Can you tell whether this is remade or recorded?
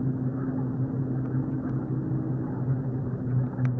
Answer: recorded